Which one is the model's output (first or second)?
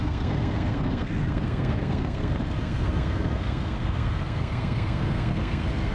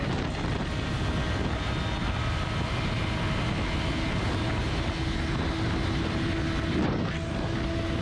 first